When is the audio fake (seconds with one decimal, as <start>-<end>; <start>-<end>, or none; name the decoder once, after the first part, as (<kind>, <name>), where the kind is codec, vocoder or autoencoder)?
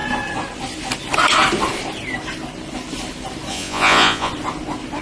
3.5-4.3 (vocoder, Vocos)